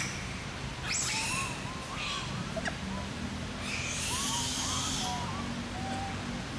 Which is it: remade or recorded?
recorded